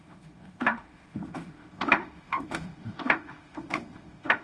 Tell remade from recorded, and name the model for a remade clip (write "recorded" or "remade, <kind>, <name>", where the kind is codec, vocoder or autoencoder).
remade, autoencoder, DAC-VAE